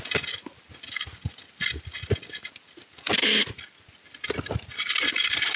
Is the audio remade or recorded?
recorded